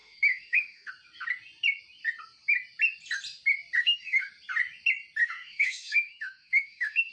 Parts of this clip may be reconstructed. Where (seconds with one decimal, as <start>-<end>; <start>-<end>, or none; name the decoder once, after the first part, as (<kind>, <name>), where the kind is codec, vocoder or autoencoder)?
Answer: 0.0-0.9 (autoencoder, DAC-VAE); 3.8-4.3; 5.2-7.1